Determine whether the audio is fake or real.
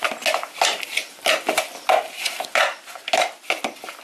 real